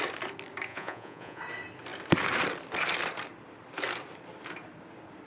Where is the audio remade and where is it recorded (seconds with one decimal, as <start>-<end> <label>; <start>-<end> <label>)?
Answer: 0.0-0.7 recorded; 0.7-1.4 remade; 1.4-5.3 recorded